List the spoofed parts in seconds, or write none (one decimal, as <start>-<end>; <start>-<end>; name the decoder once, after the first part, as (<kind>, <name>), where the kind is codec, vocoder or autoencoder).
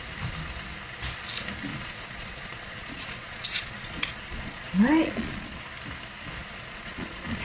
1.7-5.6 (vocoder, Vocos); 6.4-7.4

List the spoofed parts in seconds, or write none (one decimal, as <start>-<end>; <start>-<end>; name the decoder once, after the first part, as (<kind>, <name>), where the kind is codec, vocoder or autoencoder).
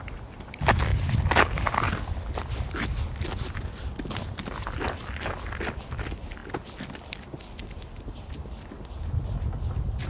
none